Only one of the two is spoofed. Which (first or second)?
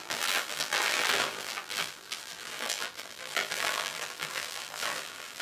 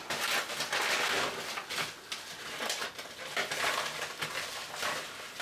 first